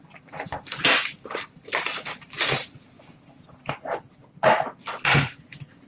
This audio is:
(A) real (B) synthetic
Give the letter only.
A